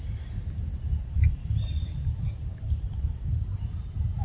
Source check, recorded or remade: remade